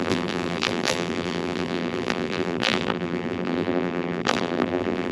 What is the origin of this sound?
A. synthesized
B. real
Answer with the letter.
A